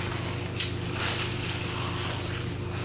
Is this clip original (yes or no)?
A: yes